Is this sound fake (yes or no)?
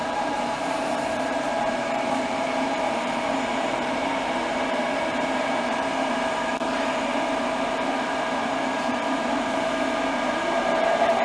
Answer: yes